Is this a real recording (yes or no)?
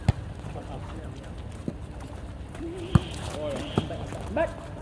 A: yes